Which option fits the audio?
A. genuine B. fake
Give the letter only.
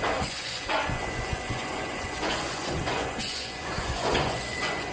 B